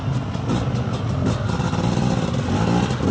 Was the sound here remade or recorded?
recorded